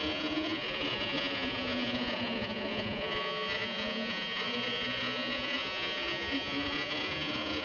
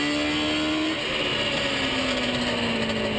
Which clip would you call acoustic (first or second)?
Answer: second